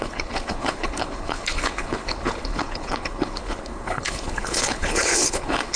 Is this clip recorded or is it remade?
remade